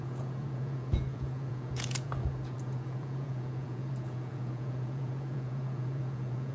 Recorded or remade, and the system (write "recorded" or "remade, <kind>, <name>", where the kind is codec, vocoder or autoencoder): remade, vocoder, Vocos